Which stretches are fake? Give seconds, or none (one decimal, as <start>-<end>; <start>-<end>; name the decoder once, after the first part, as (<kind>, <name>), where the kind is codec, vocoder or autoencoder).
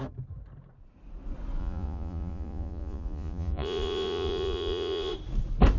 1.6-5.1 (vocoder, Vocos)